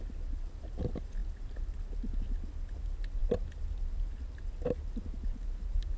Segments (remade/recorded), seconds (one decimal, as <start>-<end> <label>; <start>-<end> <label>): 0.0-1.2 recorded; 1.2-1.8 remade; 1.8-6.0 recorded